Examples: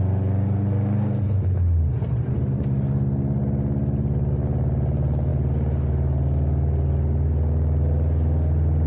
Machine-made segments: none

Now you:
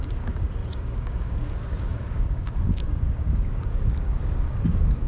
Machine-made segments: 0.0-5.1

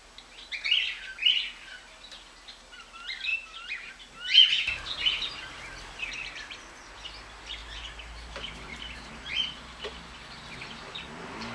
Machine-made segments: 3.3-3.9; 7.6-9.3